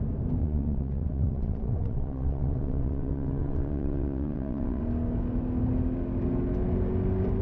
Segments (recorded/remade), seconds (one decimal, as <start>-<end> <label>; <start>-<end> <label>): 0.0-0.4 recorded; 0.4-4.8 remade; 4.8-7.4 recorded